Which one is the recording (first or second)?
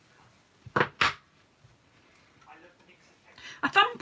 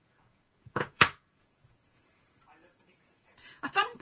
first